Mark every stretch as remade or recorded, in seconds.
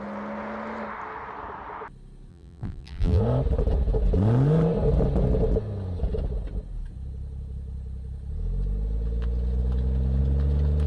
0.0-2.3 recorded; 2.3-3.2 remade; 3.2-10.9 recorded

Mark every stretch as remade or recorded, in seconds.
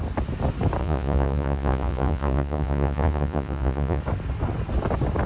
0.0-0.8 recorded; 0.8-4.0 remade; 4.0-5.3 recorded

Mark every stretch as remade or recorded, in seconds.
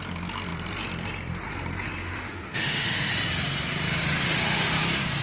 0.0-2.0 recorded; 2.0-3.1 remade; 3.1-4.2 recorded; 4.2-4.8 remade; 4.8-5.2 recorded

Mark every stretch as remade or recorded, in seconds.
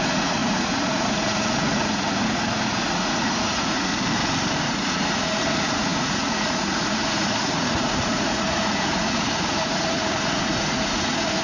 0.0-3.9 remade; 3.9-4.6 recorded; 4.6-11.4 remade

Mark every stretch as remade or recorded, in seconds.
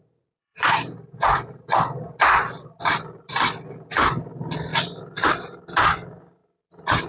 0.0-0.4 recorded; 0.4-1.6 remade; 1.6-7.1 recorded